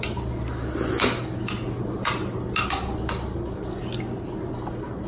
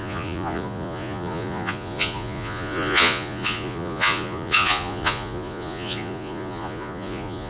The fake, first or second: second